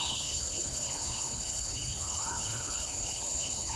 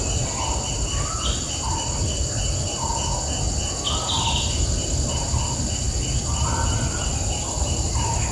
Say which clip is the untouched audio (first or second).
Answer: second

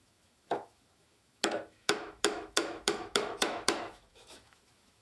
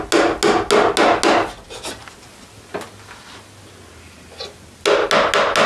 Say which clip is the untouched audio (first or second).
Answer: second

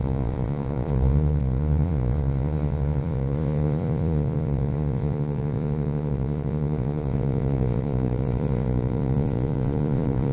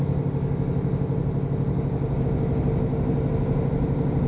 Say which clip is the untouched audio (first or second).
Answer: second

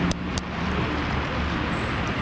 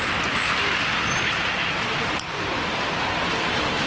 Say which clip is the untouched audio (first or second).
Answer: first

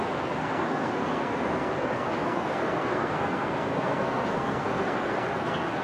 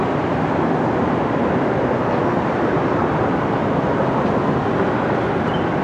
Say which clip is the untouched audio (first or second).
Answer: second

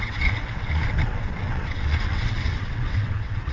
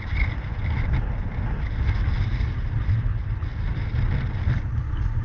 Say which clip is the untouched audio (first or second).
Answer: second